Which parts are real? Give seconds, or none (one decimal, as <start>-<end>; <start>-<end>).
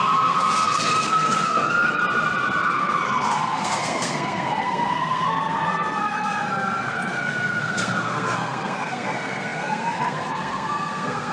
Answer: 2.0-2.6